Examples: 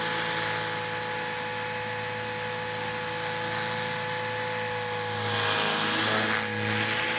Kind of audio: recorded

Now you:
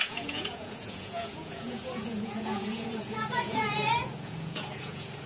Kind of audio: remade